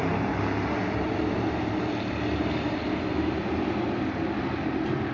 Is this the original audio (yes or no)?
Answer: yes